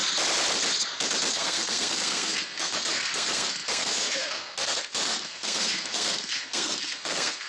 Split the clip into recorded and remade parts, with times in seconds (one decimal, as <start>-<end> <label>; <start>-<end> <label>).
0.0-1.3 recorded; 1.3-7.5 remade